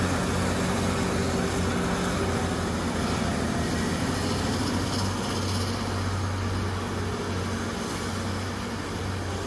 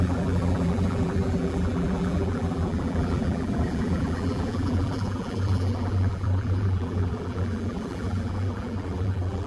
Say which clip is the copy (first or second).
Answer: second